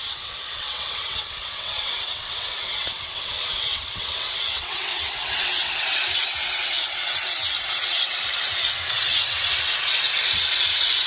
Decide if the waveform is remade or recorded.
remade